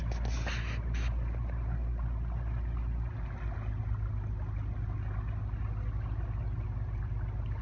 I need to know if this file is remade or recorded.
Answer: recorded